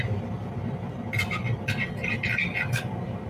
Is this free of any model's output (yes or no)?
yes